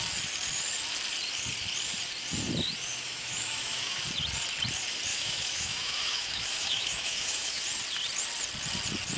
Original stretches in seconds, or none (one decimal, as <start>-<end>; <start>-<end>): 0.0-2.9; 4.0-5.1; 7.6-9.2